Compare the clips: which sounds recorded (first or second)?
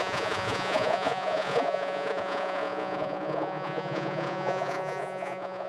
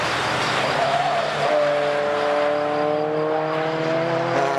second